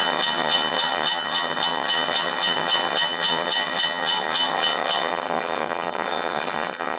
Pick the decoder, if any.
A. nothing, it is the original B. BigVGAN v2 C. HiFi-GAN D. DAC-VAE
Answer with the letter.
C